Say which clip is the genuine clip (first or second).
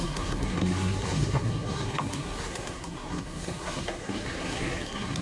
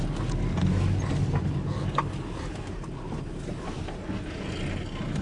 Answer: second